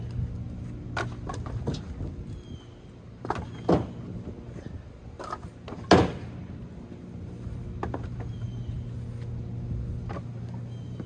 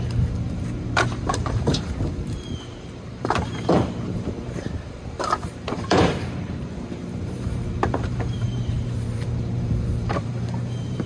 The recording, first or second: first